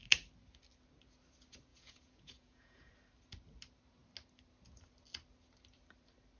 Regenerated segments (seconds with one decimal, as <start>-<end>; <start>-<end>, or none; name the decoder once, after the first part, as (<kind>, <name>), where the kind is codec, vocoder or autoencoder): 1.7-2.9 (vocoder, Vocos)

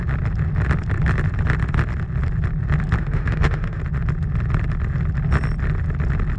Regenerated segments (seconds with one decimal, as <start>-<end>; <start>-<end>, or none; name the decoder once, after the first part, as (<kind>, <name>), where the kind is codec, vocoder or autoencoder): 3.0-3.8 (autoencoder, DAC-VAE)